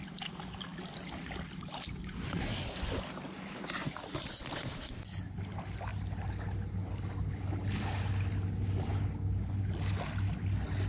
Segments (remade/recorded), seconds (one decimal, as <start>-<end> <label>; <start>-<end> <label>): 0.0-10.9 recorded